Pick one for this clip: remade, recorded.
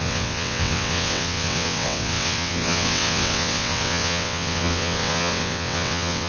remade